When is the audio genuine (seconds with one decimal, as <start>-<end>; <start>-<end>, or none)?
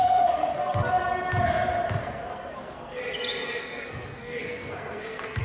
1.0-2.0; 3.0-3.6